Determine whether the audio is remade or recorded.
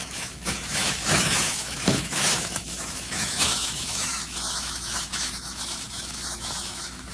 remade